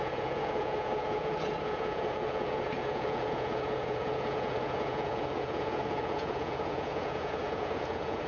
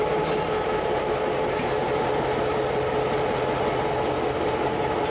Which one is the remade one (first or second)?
first